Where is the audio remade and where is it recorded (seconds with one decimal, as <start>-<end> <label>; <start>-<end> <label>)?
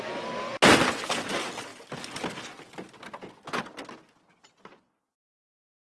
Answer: 0.0-5.9 recorded